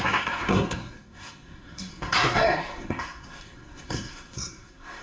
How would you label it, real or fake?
fake